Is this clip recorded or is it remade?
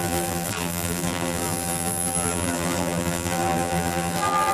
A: remade